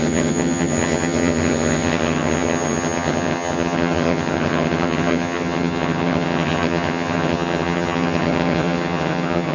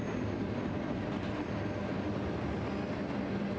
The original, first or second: second